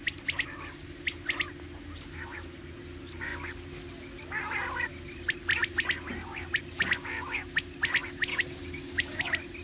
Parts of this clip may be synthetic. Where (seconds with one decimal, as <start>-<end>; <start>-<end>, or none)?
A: 8.3-9.2

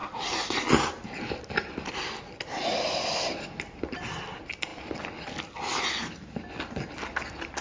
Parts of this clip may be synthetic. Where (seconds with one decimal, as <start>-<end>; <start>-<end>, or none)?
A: none

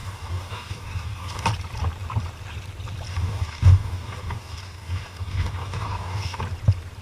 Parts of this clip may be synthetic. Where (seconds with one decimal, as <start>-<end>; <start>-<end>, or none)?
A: 0.0-1.5; 3.1-6.4